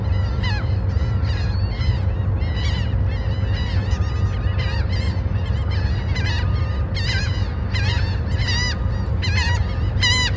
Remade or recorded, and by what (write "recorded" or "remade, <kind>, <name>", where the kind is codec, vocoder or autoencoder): recorded